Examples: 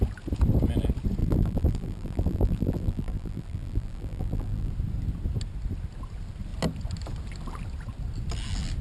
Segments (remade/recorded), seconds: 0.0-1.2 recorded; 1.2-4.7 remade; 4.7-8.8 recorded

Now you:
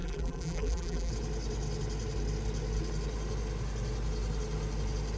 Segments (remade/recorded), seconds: 0.0-1.1 remade; 1.1-5.2 recorded

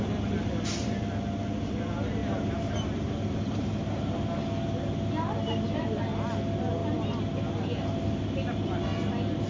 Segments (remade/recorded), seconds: 0.0-2.2 recorded; 2.2-4.4 remade; 4.4-9.5 recorded

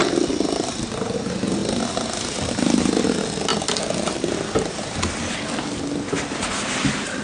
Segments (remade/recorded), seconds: 0.0-1.2 remade; 1.2-7.2 recorded

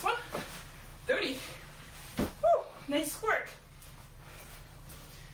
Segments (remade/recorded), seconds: 0.0-0.9 recorded; 0.9-1.7 remade; 1.7-2.1 recorded; 2.1-3.0 remade; 3.0-5.3 recorded